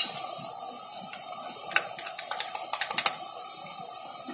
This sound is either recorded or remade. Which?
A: recorded